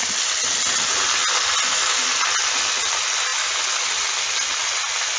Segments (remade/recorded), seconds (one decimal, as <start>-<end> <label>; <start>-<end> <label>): 0.0-5.2 recorded